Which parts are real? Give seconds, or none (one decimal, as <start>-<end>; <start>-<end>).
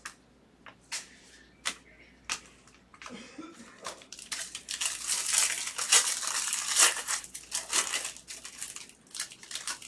0.0-2.9; 7.2-9.9